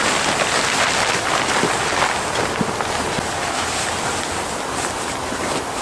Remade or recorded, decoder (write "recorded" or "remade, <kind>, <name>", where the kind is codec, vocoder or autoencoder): recorded